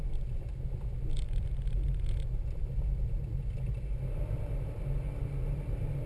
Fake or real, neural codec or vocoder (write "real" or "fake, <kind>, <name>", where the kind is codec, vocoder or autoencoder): real